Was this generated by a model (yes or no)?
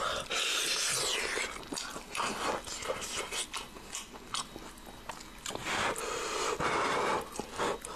no